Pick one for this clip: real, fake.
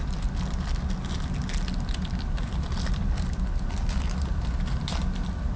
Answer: fake